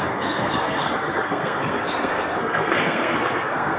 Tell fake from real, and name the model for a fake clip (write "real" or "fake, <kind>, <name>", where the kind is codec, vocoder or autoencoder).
fake, codec, SNAC